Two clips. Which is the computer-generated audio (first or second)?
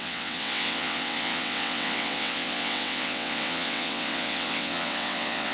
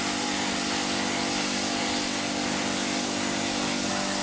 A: first